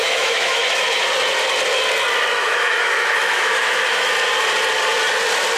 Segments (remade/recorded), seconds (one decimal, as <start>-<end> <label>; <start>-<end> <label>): 0.0-0.6 remade; 0.6-2.3 recorded; 2.3-4.1 remade; 4.1-5.6 recorded